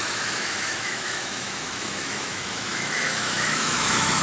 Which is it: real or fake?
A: fake